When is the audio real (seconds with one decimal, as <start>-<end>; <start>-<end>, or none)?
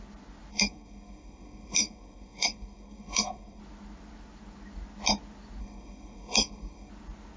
0.0-0.5; 3.6-5.6; 6.9-7.4